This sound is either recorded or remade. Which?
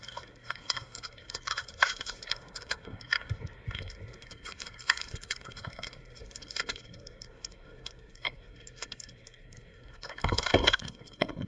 remade